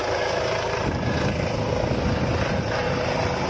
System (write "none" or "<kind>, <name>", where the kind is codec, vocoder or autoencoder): none